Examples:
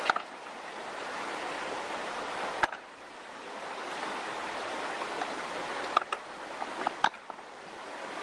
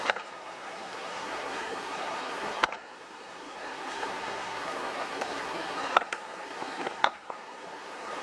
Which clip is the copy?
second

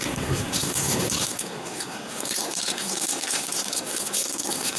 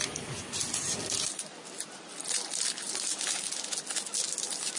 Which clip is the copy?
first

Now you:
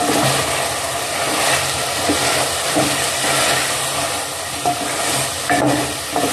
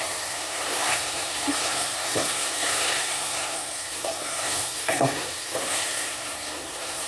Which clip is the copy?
second